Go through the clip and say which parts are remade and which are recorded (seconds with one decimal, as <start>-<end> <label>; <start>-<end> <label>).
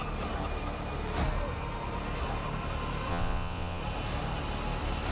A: 0.0-3.1 recorded; 3.1-3.8 remade; 3.8-5.1 recorded